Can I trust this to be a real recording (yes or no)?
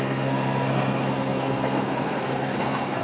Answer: no